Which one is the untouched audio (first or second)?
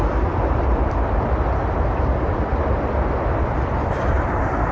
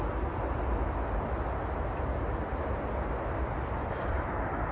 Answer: second